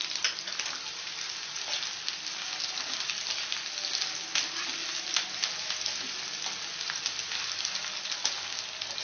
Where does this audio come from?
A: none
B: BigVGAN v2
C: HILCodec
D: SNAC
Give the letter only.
A